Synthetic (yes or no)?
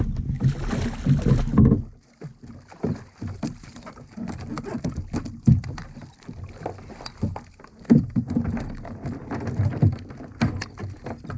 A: no